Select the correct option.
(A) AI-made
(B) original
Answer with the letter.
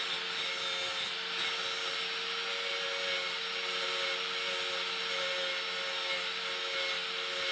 B